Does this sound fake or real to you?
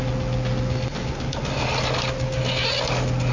real